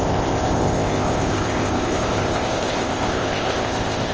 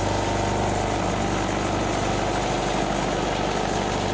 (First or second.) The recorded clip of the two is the second